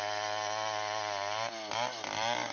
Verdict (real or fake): real